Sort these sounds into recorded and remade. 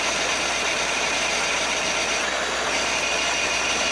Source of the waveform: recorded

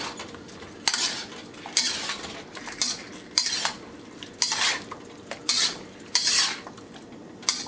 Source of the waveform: recorded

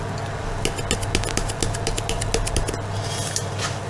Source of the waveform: recorded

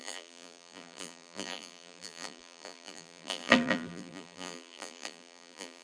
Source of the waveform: remade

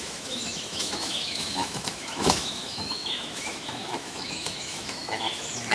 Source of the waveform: remade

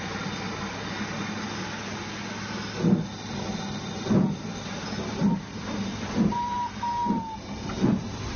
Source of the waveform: recorded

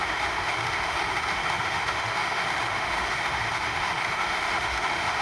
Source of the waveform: remade